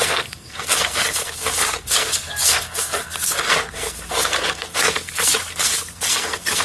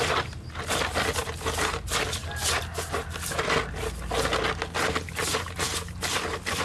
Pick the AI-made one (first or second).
first